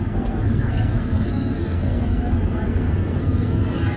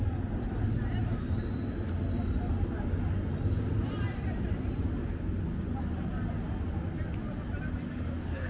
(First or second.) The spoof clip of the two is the first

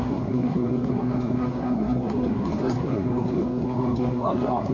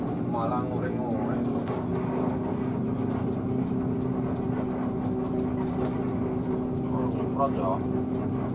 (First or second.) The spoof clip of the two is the first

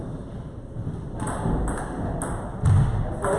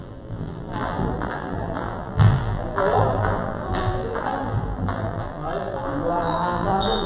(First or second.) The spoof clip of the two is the second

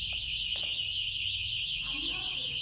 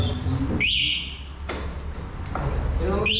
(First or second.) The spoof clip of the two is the first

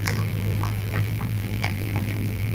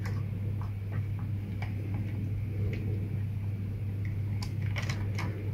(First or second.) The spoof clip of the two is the first